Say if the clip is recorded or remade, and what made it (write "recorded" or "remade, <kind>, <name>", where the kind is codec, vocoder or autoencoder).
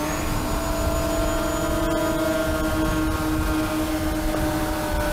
recorded